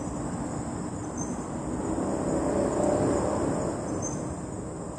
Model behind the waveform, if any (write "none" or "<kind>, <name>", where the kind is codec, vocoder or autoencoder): none